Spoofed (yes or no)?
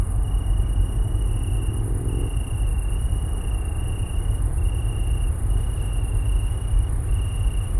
no